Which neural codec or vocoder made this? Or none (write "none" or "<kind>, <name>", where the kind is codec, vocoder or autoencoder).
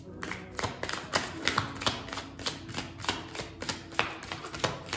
none